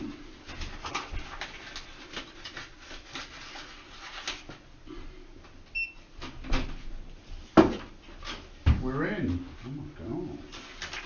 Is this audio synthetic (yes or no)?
no